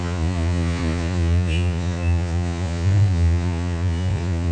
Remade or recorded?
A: remade